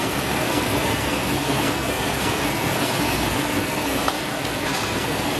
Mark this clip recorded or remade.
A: remade